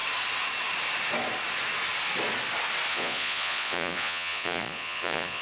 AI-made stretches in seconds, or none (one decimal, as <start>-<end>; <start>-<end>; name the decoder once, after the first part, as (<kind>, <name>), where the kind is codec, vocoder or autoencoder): 2.9-5.4 (vocoder, Vocos)